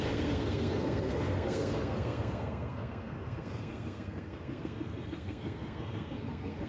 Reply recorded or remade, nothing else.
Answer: remade